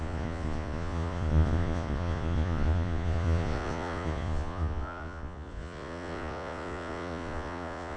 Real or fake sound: fake